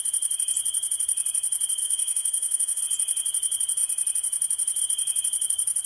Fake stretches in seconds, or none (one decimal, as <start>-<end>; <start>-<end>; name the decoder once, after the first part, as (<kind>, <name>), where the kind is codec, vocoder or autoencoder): 1.8-2.8 (autoencoder, DAC-VAE)

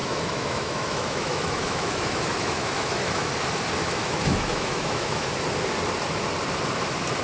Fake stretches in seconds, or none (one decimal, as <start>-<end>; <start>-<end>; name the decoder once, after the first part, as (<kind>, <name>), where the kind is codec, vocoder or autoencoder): 0.0-3.3 (autoencoder, DAC-VAE); 3.8-5.3

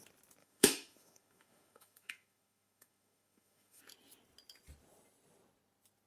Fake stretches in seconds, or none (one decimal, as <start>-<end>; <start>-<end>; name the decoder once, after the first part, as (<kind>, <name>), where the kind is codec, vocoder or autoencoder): 0.4-3.8 (autoencoder, DAC-VAE)

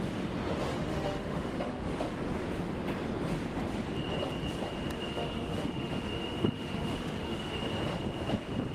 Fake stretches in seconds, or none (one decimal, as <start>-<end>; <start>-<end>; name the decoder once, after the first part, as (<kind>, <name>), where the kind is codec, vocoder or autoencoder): 0.7-1.9 (autoencoder, DAC-VAE); 5.1-7.6

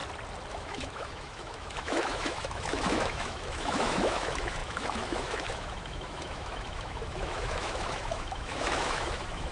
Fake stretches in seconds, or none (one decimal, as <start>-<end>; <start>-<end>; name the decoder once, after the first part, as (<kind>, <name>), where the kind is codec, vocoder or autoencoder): 0.5-9.5 (autoencoder, DAC-VAE)

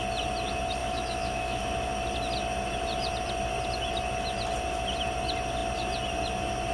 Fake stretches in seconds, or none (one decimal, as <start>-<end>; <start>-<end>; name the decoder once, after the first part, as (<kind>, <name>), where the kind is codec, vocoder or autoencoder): 0.8-1.6 (autoencoder, DAC-VAE)